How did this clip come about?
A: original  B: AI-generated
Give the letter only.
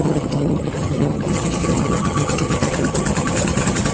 B